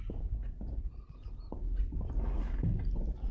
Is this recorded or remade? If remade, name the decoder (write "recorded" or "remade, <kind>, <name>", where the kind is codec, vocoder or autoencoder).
recorded